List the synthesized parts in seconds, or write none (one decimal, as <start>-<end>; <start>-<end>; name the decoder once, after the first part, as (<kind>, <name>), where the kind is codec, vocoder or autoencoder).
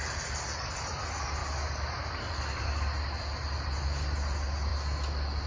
none